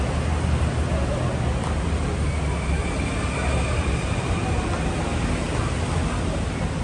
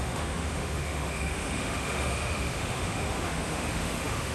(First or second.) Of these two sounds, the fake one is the second